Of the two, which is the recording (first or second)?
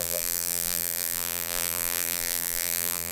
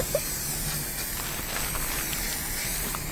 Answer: second